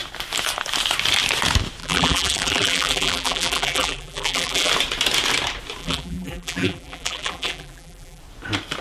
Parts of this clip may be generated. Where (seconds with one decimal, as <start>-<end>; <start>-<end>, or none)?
1.8-4.7; 5.8-8.2